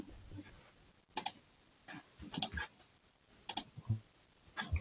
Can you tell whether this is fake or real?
real